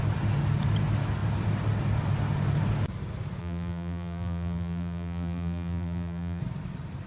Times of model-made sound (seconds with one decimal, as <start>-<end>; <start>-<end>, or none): 3.4-6.4